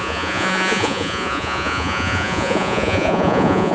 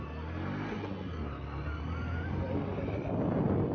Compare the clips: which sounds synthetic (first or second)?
first